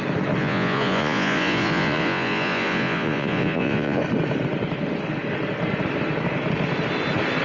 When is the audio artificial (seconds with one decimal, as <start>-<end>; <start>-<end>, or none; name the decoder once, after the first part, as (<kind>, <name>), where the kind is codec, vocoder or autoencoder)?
0.4-4.0 (vocoder, Vocos)